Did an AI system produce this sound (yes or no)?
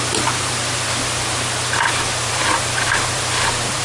yes